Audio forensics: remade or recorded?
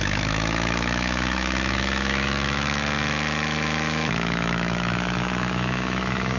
remade